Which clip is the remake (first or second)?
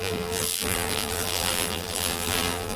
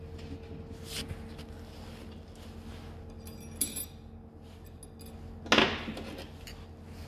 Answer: first